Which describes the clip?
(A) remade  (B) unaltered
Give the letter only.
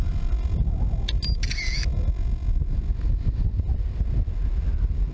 B